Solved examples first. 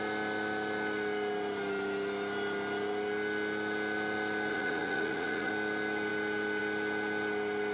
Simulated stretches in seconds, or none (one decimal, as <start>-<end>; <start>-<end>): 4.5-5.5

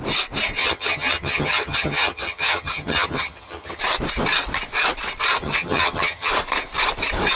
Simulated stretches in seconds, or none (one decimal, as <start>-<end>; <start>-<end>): 0.6-3.8; 5.4-6.3

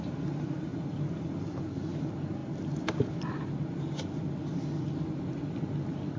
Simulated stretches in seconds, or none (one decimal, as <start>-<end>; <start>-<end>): none

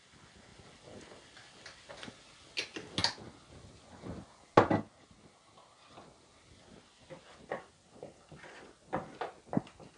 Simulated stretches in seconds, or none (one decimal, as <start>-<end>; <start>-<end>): none

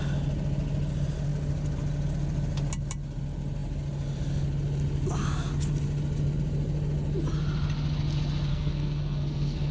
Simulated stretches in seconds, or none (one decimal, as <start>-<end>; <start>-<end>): 8.5-9.7

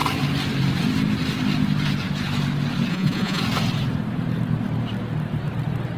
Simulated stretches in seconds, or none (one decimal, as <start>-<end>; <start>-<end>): 2.9-3.4

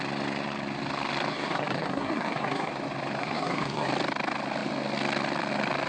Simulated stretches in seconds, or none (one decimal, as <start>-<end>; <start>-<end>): 1.3-2.7; 3.2-3.9

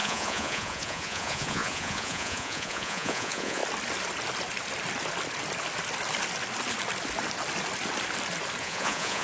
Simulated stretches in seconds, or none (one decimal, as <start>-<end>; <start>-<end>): 0.0-3.6; 8.6-9.2